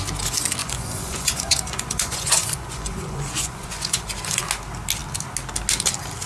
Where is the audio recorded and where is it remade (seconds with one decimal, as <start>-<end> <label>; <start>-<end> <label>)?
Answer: 0.0-0.6 recorded; 0.6-4.4 remade; 4.4-6.3 recorded